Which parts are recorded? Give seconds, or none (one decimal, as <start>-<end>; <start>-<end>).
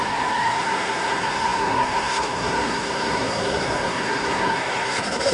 none